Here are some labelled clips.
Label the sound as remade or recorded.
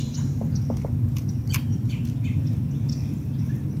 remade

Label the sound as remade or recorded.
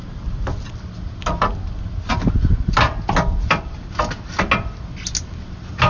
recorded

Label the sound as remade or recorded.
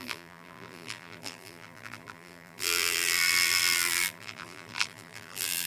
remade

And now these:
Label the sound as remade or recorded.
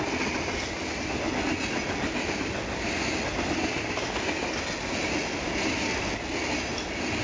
recorded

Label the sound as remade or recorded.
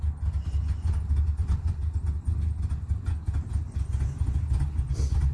recorded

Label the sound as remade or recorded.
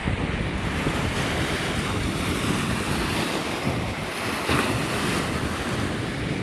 remade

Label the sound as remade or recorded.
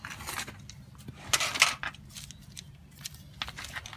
recorded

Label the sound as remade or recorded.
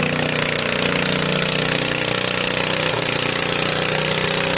recorded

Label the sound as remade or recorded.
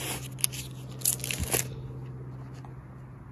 recorded